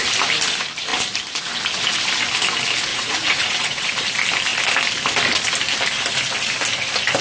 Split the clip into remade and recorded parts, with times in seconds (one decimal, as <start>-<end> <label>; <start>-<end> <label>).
0.0-2.9 recorded; 2.9-3.9 remade; 3.9-7.2 recorded